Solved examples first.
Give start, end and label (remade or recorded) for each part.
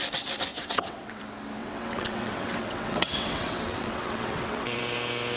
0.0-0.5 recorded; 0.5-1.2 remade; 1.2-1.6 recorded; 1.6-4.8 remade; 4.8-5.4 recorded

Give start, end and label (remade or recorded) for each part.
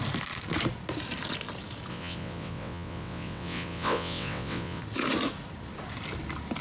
0.0-1.9 recorded; 1.9-4.8 remade; 4.8-6.6 recorded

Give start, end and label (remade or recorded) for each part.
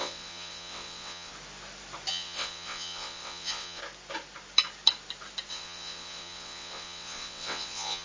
0.0-1.3 remade; 1.3-2.1 recorded; 2.1-3.8 remade; 3.8-5.5 recorded; 5.5-8.0 remade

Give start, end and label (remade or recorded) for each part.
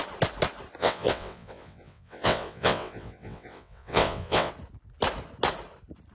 0.0-0.8 recorded; 0.8-4.5 remade; 4.5-6.1 recorded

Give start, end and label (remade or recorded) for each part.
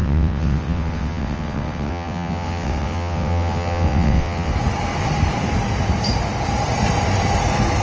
0.0-4.5 remade; 4.5-7.8 recorded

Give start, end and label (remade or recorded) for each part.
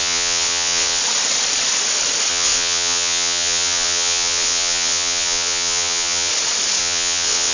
0.0-1.0 remade; 1.0-2.3 recorded; 2.3-6.3 remade; 6.3-6.8 recorded; 6.8-7.5 remade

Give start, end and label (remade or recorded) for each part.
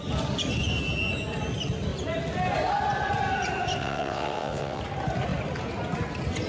0.0-3.8 recorded; 3.8-4.8 remade; 4.8-6.5 recorded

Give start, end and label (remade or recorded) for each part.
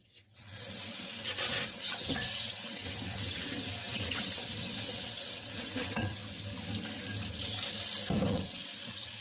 0.0-6.2 remade; 6.2-8.3 recorded; 8.3-9.2 remade